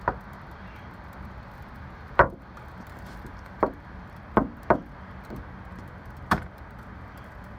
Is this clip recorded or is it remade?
remade